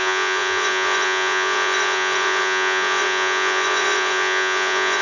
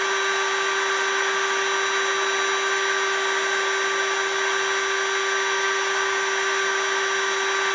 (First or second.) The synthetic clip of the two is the first